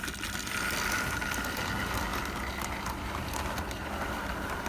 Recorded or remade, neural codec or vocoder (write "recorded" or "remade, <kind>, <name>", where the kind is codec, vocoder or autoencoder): recorded